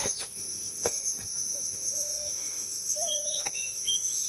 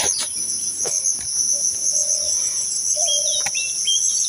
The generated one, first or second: first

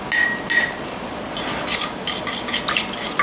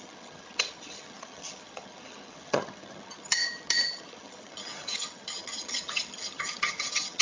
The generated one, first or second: second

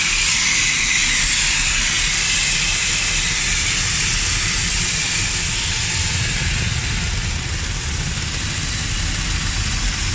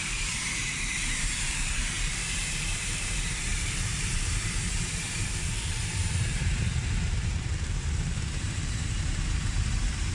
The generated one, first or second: second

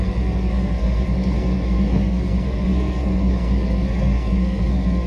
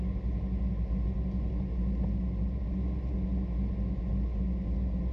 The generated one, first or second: first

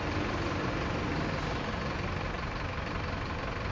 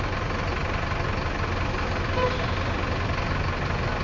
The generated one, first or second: first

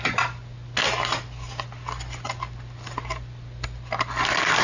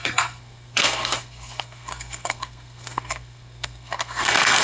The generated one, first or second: second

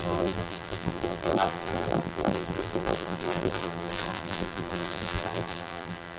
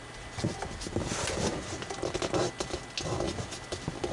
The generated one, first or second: first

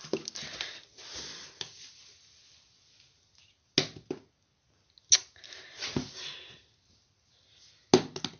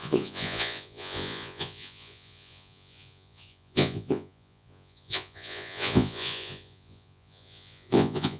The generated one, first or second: second